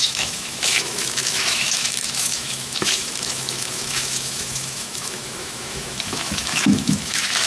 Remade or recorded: remade